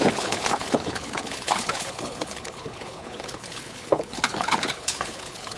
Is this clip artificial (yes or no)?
yes